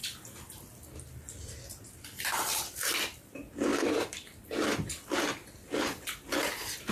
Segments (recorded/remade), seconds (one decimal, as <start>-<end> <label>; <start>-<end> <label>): 0.0-0.7 recorded; 0.7-6.9 remade